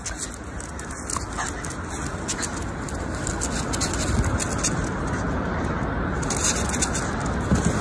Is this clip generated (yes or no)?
no